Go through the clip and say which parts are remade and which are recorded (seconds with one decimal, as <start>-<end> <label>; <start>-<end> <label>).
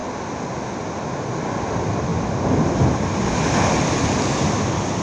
0.0-5.0 recorded